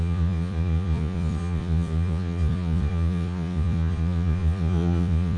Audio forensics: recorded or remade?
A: remade